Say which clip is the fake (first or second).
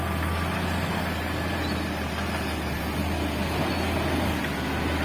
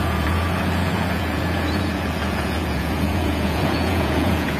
second